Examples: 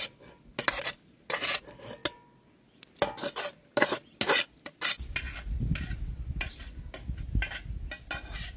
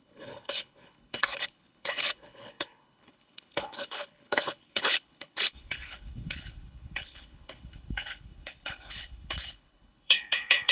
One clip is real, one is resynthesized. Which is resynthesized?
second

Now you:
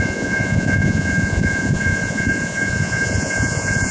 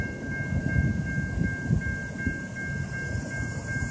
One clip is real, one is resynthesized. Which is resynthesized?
first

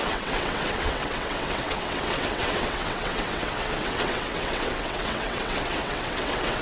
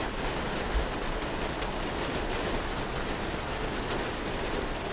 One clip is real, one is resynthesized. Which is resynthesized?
first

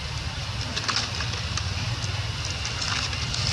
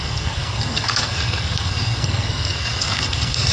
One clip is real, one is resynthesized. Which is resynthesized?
second